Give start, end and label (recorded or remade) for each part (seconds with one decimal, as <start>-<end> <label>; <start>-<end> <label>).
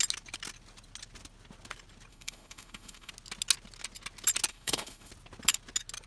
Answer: 0.0-2.1 recorded; 2.1-3.1 remade; 3.1-4.5 recorded; 4.5-5.1 remade; 5.1-6.1 recorded